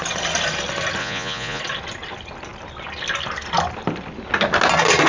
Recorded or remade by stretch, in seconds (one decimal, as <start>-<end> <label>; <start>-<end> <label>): 0.0-1.0 recorded; 1.0-1.6 remade; 1.6-5.1 recorded